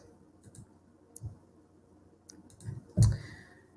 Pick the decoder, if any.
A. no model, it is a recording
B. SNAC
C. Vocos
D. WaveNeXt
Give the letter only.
A